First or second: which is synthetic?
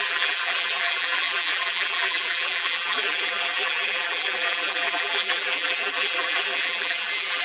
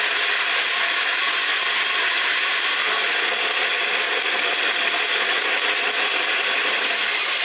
first